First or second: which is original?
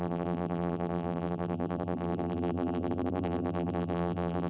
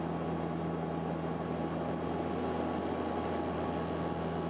second